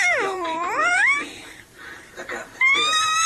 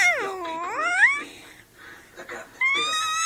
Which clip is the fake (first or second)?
first